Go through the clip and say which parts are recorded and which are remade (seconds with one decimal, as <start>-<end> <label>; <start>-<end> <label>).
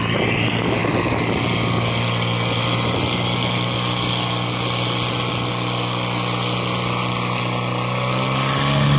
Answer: 0.0-9.0 recorded